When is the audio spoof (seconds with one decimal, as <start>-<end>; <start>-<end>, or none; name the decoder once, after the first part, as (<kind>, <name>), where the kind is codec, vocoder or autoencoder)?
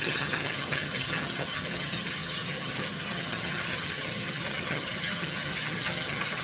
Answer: 0.0-6.4 (vocoder, HiFi-GAN)